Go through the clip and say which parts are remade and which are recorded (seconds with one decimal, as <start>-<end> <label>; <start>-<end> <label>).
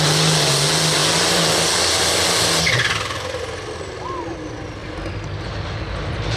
0.0-6.4 recorded